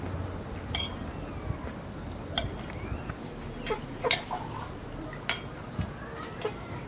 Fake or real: real